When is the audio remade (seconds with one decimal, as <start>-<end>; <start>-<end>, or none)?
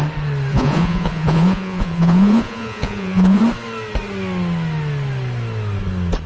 0.5-3.4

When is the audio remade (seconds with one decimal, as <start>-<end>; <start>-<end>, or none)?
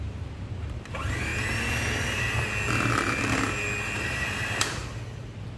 0.0-1.3; 3.8-4.8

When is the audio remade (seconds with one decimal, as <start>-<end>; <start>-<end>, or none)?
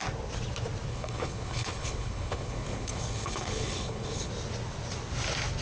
0.9-4.3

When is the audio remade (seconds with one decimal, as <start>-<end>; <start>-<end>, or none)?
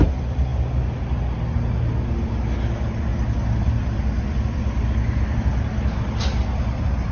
none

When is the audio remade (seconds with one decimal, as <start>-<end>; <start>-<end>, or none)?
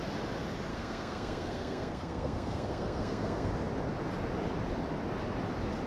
0.7-3.5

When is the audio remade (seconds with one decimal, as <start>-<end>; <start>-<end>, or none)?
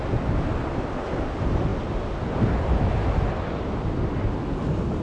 none